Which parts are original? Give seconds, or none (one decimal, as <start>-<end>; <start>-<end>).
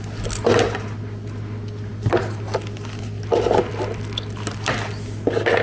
0.0-5.6